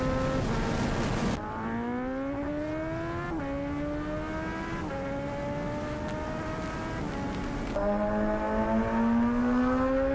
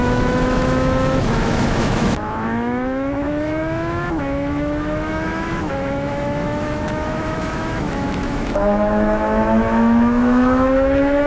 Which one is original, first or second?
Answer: first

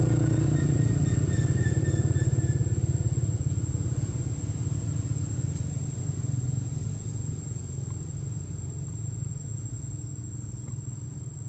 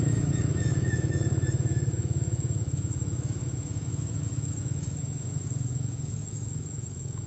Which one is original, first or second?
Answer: first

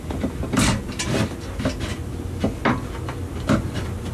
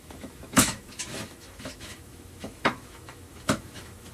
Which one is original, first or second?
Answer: first